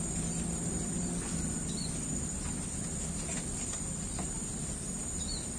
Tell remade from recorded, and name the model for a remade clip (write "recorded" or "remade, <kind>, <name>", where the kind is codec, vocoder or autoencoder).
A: recorded